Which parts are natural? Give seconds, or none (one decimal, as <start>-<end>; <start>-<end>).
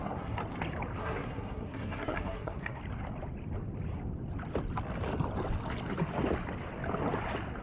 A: 0.4-1.0; 2.8-7.6